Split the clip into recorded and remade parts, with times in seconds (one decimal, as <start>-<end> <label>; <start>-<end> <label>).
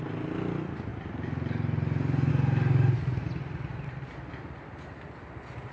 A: 0.0-5.7 recorded